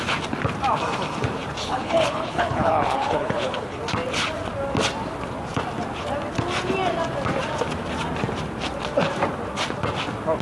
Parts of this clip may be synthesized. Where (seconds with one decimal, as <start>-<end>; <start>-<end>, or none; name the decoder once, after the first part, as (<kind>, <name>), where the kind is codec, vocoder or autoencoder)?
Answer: 1.6-3.8 (codec, HILCodec)